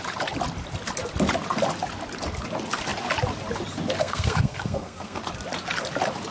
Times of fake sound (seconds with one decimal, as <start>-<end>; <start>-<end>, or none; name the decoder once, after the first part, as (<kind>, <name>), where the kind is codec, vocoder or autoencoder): 4.0-5.2 (codec, SNAC)